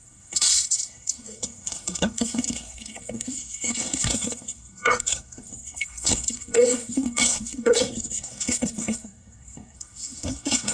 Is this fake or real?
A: fake